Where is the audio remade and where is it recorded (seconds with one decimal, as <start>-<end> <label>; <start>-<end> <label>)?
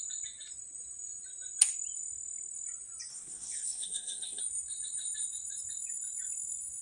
0.0-3.1 recorded; 3.1-4.4 remade; 4.4-6.8 recorded